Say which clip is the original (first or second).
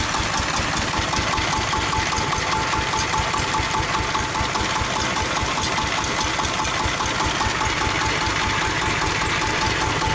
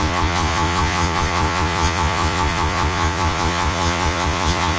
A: first